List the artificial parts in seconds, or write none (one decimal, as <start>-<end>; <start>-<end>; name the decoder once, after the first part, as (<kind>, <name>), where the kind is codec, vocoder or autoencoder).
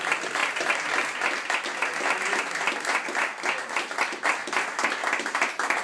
none